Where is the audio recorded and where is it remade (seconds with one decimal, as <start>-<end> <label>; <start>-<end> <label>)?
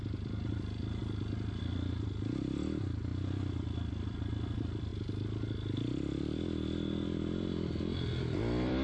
0.0-1.0 remade; 1.0-1.6 recorded; 1.6-3.1 remade; 3.1-3.9 recorded; 3.9-4.9 remade; 4.9-6.2 recorded; 6.2-8.8 remade